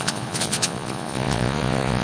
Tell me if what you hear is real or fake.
fake